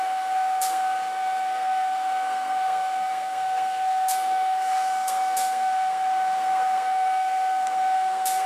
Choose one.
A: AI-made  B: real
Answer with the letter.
A